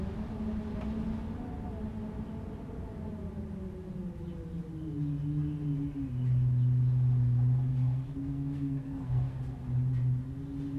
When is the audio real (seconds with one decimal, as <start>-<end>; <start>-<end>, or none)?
0.0-7.7; 9.4-10.8